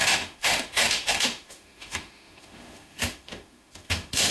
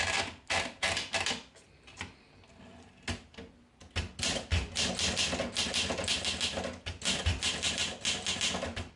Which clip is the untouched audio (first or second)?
second